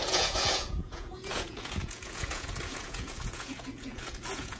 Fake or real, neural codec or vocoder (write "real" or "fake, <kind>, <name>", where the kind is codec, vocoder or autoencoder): fake, vocoder, Vocos